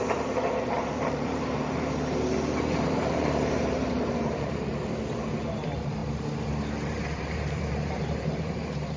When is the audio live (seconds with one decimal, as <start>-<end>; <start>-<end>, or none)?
6.0-6.9